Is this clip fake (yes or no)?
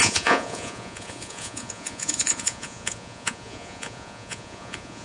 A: yes